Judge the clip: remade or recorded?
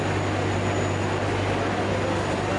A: recorded